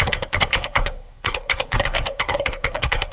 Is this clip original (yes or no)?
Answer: no